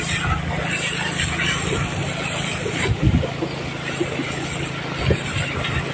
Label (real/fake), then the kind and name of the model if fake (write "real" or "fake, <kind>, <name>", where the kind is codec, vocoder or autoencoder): real